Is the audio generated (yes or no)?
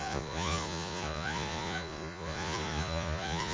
yes